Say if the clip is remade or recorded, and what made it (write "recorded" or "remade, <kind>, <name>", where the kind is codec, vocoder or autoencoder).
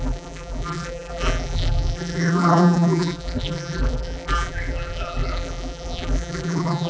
remade, vocoder, BigVGAN v2